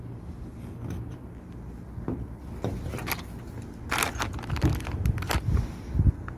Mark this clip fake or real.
real